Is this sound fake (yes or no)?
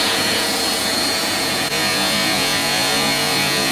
yes